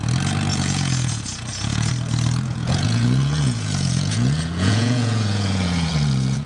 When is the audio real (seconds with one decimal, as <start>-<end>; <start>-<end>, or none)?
0.0-0.5; 1.9-2.5